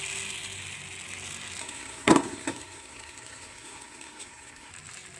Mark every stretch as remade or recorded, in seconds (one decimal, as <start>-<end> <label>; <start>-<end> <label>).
0.0-1.6 recorded; 1.6-4.7 remade; 4.7-5.2 recorded